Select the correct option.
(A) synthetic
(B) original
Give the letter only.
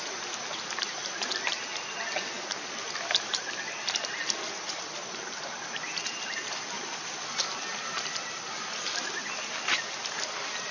B